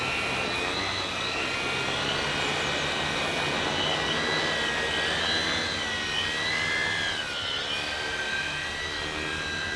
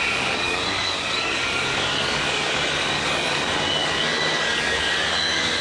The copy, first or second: second